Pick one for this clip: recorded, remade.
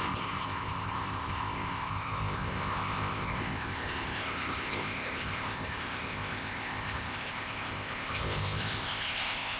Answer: remade